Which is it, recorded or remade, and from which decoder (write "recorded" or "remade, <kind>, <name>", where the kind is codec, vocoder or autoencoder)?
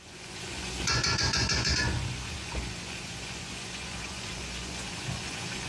remade, vocoder, Vocos